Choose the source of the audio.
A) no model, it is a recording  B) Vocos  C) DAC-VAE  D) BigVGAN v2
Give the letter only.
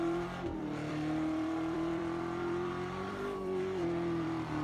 D